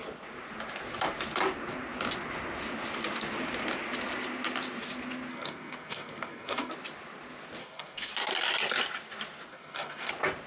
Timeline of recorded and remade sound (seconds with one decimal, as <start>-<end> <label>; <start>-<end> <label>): 0.0-5.3 recorded; 5.3-6.7 remade; 6.7-7.6 recorded; 7.6-8.1 remade; 8.1-9.5 recorded; 9.5-10.1 remade; 10.1-10.5 recorded